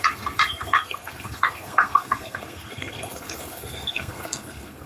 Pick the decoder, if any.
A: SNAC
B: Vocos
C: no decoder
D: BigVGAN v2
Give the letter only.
A